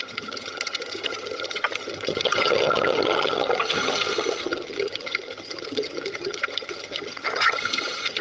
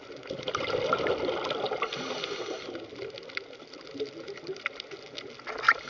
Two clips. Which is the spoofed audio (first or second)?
first